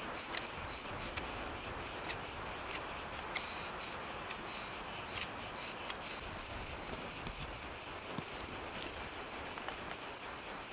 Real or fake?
real